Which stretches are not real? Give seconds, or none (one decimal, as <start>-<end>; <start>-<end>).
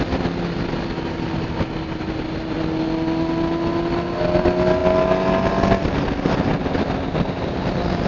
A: none